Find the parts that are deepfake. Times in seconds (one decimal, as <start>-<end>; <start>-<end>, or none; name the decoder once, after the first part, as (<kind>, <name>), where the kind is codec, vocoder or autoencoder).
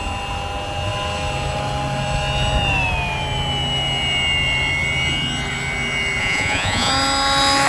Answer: 6.2-6.9 (vocoder, Vocos)